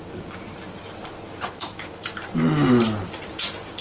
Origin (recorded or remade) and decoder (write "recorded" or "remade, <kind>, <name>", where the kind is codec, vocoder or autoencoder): recorded